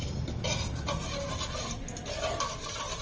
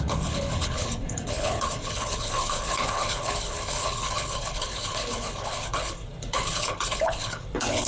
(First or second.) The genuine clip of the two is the first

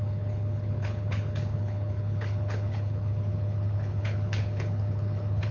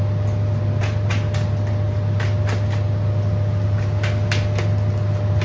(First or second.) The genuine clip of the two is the second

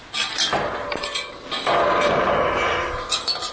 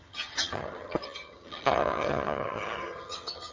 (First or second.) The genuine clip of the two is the first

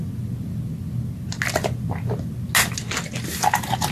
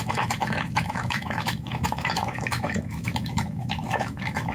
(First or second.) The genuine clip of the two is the first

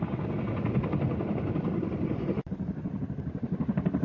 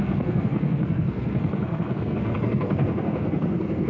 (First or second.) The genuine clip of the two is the first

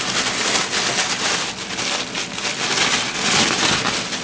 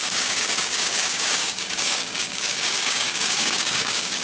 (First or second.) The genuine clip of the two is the first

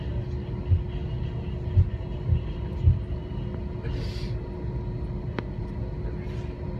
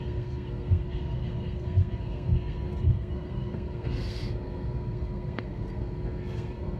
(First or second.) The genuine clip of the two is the first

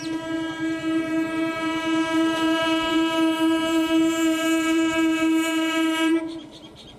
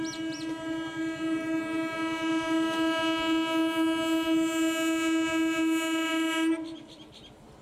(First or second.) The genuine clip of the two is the second